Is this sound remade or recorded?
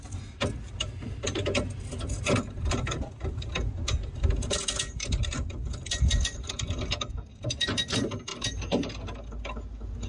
recorded